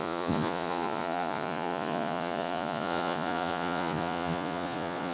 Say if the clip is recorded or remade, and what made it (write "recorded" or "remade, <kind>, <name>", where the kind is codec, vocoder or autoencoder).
remade, vocoder, Vocos